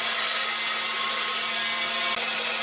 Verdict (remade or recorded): recorded